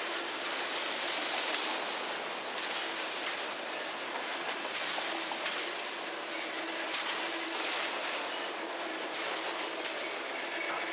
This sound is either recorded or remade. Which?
recorded